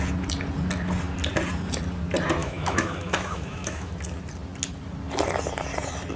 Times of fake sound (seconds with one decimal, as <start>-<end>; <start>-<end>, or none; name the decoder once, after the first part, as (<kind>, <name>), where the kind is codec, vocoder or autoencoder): 2.4-3.9 (autoencoder, DAC-VAE)